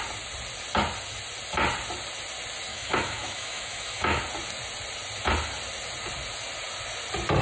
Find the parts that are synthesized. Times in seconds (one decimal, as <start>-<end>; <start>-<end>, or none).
2.7-4.2